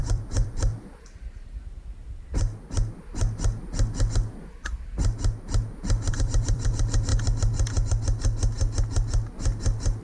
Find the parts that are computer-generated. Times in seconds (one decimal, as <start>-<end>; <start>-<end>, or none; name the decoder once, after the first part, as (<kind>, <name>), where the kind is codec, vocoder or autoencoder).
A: 0.0-2.5 (vocoder, BigVGAN v2); 6.1-7.1

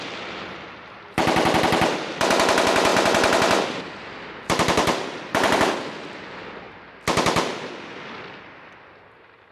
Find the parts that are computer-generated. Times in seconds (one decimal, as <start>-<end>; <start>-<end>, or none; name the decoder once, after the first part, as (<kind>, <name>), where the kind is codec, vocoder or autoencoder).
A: none